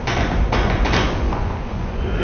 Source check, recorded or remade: remade